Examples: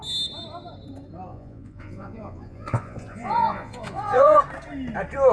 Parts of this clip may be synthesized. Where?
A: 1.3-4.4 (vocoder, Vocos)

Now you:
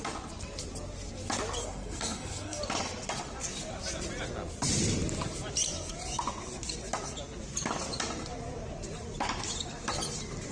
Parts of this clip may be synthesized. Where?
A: 1.6-2.6 (codec, SNAC)

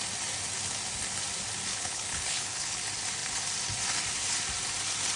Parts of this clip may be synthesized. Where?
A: 1.7-2.8 (codec, HILCodec)

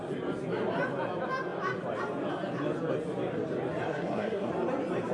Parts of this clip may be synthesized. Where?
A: 3.9-4.5 (codec, SNAC)

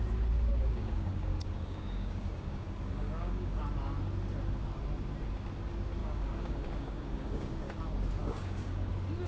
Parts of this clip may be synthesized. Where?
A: 0.5-3.6 (codec, DAC); 6.0-7.6; 8.2-8.9

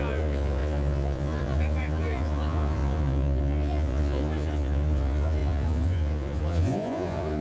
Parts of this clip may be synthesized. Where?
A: 0.0-7.4 (vocoder, Vocos)

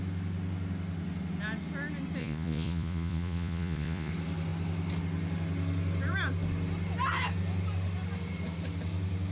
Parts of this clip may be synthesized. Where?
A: 2.2-4.1 (vocoder, Vocos)